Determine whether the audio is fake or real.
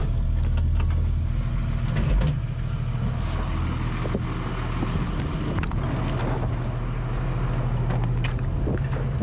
real